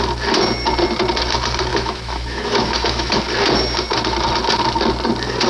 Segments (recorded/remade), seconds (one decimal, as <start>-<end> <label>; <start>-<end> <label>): 0.0-1.7 recorded; 1.7-3.1 remade; 3.1-5.5 recorded